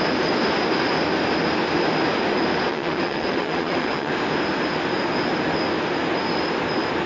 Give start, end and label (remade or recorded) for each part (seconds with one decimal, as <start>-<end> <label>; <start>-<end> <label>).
0.0-2.7 recorded; 2.7-4.1 remade; 4.1-7.1 recorded